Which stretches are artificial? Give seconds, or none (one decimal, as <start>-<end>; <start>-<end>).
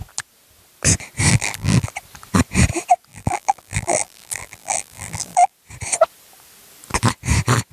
1.3-1.9; 3.1-5.5